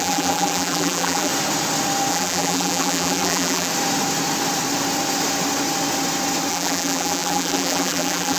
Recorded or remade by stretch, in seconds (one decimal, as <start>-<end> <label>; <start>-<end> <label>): 0.0-1.3 remade; 1.3-2.1 recorded; 2.1-3.7 remade; 3.7-6.5 recorded; 6.5-8.4 remade